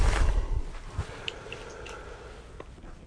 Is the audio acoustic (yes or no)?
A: yes